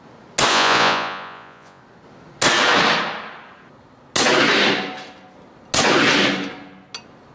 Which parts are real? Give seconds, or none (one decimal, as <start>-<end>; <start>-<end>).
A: 0.0-0.5; 1.8-7.3